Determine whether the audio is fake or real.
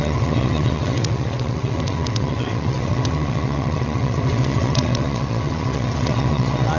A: fake